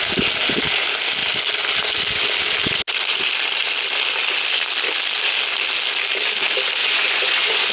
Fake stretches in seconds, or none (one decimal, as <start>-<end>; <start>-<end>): 6.8-7.7